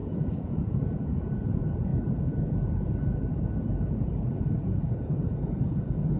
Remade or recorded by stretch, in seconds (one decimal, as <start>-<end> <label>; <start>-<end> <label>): 0.0-6.2 remade